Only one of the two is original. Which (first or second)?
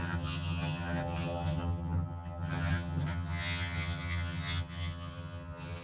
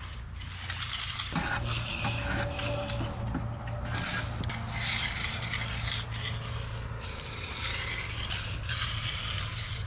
second